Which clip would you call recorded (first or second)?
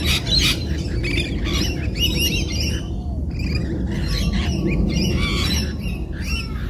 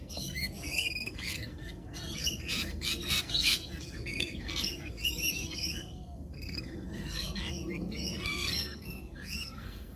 first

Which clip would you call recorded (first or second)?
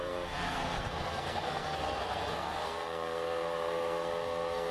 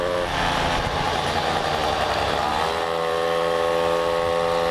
second